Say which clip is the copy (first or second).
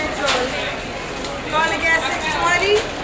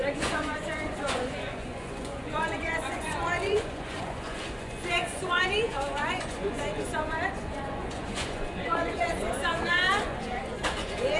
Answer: second